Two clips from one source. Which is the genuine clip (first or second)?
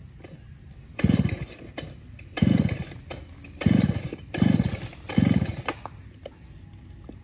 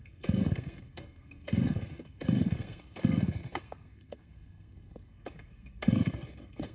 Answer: first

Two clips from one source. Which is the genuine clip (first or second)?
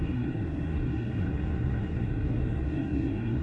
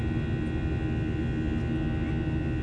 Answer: second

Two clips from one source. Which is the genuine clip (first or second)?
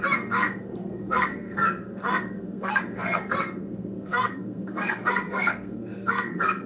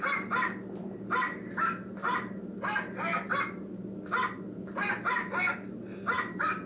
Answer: second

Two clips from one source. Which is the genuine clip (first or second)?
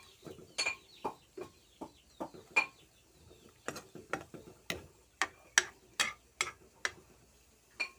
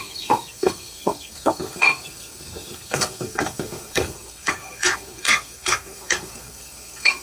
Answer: first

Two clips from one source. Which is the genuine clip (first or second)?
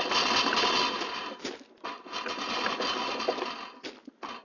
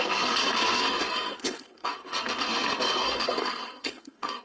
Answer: first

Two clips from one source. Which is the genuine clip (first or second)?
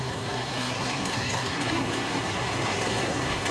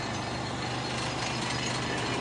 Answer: second